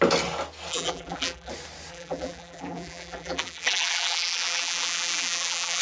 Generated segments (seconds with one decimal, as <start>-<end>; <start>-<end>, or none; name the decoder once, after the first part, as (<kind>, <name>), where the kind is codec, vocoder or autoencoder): 0.7-1.5 (vocoder, BigVGAN v2); 1.9-5.8